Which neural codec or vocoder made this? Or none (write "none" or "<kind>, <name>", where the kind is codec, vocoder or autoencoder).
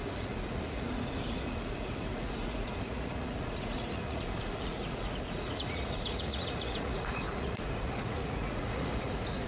vocoder, Vocos